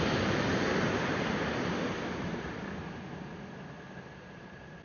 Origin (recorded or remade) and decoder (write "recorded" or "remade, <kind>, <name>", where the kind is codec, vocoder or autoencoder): recorded